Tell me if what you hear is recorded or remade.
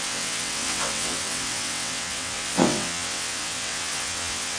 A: remade